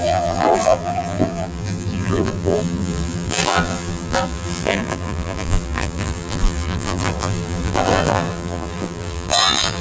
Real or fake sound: fake